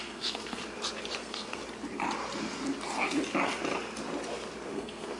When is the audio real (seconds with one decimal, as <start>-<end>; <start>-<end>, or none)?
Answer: 0.6-1.2; 1.6-4.7